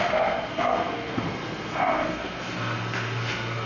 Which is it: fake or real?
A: fake